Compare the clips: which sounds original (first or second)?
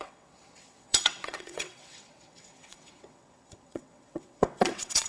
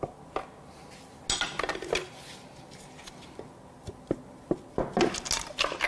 second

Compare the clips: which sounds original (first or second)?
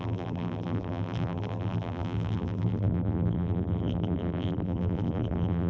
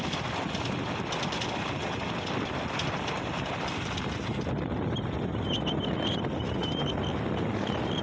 second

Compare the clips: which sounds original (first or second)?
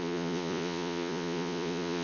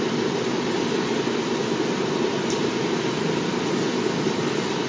second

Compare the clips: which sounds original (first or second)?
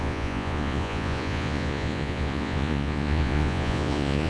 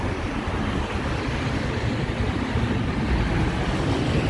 second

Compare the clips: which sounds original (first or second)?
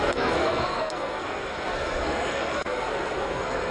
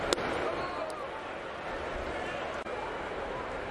second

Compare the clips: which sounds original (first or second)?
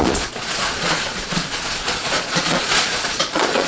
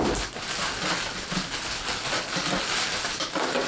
second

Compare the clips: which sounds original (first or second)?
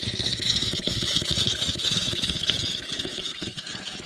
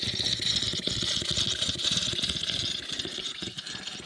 second